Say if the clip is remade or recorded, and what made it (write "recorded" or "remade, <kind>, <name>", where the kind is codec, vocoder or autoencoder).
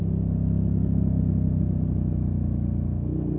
recorded